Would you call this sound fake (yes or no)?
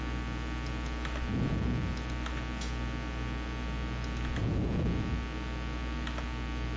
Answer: no